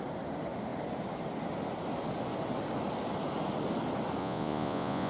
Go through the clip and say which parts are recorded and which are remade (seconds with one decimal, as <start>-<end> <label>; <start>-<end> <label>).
0.0-4.2 recorded; 4.2-5.1 remade